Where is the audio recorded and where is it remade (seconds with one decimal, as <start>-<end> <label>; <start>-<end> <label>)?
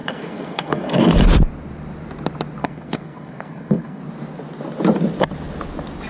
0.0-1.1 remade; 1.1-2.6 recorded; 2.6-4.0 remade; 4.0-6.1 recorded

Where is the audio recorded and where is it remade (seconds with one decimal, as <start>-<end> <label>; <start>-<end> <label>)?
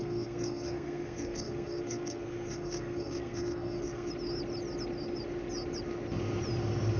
0.0-4.1 remade; 4.1-7.0 recorded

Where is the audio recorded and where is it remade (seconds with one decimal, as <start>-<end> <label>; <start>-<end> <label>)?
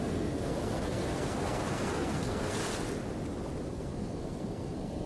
0.0-2.6 remade; 2.6-3.7 recorded; 3.7-5.1 remade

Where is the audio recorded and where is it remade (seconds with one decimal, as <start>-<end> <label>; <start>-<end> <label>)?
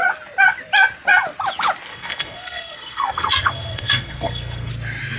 0.0-1.9 recorded; 1.9-4.7 remade; 4.7-5.2 recorded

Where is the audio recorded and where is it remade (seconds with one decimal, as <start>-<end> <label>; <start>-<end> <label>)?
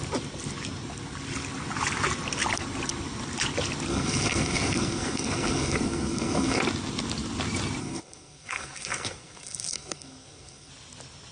0.0-3.9 recorded; 3.9-6.6 remade; 6.6-7.8 recorded; 7.8-10.7 remade; 10.7-11.3 recorded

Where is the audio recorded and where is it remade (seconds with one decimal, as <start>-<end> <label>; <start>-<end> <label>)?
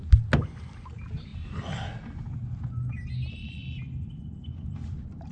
0.0-5.3 recorded